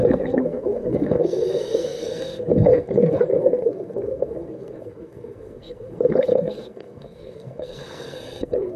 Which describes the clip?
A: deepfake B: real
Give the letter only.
A